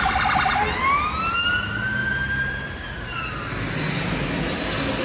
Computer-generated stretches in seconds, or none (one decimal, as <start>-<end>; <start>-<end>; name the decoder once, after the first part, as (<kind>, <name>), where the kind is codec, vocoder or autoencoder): 2.0-3.5 (vocoder, BigVGAN v2)